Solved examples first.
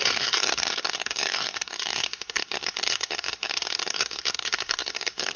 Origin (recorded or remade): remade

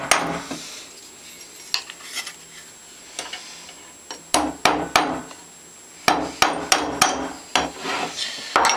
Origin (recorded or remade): recorded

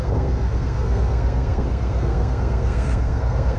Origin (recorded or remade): remade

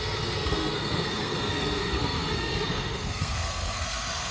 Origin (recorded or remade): remade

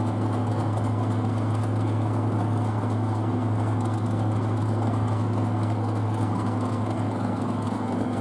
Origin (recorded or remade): remade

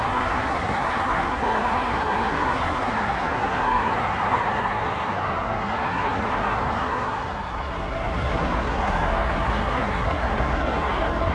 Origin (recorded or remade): remade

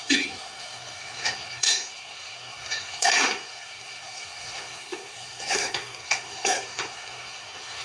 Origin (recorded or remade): remade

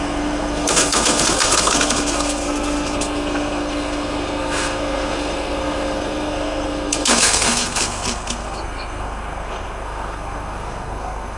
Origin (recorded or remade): remade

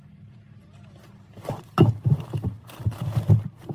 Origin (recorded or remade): recorded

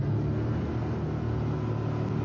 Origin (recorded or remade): recorded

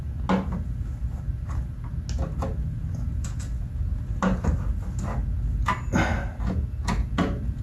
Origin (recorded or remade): recorded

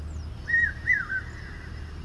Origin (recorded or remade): recorded